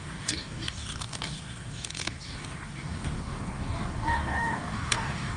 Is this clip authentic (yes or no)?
no